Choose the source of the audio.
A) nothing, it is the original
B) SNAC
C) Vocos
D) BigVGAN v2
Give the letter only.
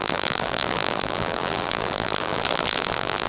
D